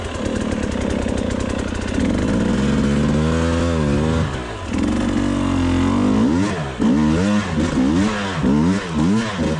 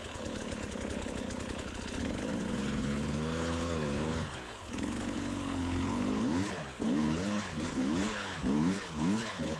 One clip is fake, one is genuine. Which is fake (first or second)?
second